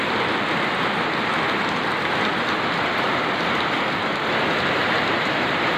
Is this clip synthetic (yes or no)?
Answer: no